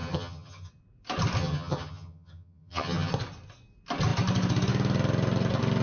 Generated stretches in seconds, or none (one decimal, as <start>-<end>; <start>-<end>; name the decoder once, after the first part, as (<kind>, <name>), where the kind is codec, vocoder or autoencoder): 0.0-0.7 (vocoder, HiFi-GAN); 1.4-3.1